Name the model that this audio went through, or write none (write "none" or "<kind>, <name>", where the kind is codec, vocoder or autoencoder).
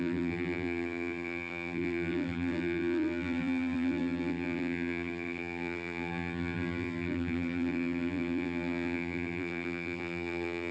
vocoder, BigVGAN v2